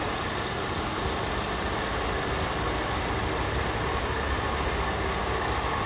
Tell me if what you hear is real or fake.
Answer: real